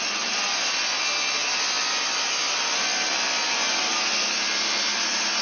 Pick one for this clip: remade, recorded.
recorded